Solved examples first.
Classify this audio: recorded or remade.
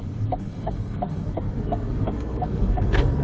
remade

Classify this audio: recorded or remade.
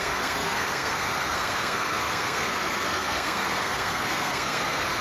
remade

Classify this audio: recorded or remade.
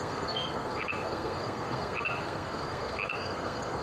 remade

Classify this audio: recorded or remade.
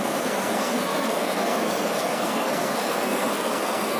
remade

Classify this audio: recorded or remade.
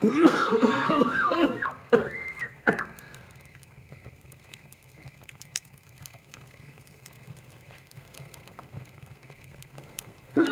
remade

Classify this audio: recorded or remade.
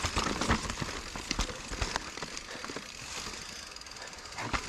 recorded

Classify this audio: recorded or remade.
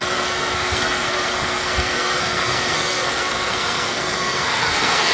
remade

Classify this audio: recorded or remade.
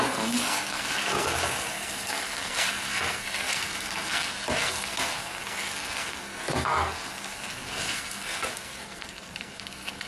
remade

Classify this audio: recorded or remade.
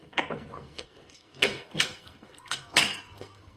remade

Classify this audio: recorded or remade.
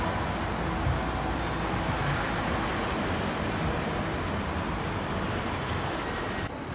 recorded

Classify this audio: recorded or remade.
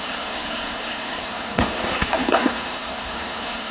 remade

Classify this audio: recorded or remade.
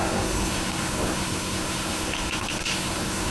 remade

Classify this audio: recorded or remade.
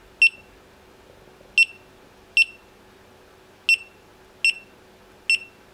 recorded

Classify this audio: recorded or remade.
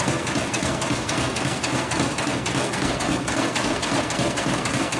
remade